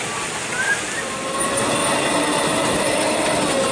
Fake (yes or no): no